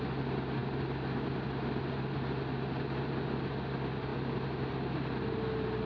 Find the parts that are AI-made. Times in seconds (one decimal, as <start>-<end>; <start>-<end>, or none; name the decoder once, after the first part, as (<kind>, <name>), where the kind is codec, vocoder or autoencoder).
none